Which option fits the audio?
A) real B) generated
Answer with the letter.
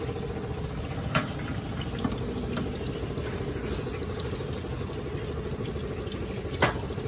A